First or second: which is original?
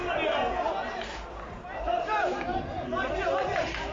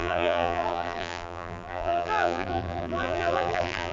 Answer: first